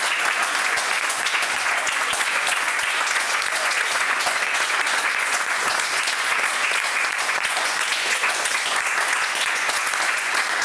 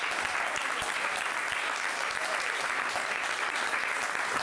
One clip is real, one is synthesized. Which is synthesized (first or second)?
first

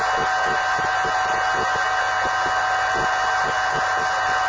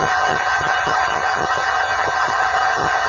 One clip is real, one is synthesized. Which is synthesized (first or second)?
second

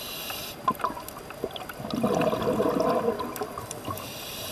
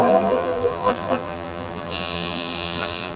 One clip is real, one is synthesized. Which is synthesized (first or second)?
second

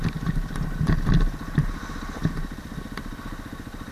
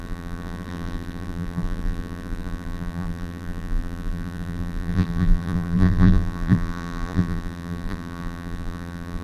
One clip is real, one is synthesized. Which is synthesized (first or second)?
second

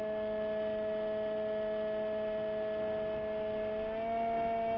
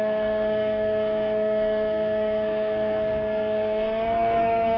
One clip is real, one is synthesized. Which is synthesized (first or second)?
second